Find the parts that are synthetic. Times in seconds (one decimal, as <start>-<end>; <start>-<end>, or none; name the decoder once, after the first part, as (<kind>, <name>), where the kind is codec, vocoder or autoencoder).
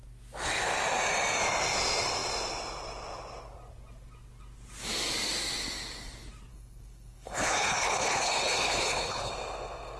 6.5-9.3 (codec, HILCodec)